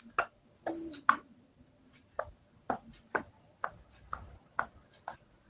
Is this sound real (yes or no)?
yes